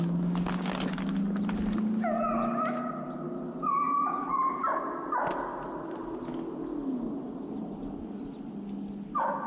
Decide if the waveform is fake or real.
real